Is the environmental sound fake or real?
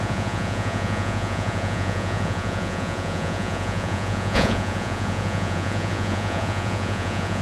fake